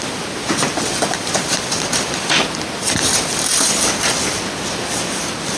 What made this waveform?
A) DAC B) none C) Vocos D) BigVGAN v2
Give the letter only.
D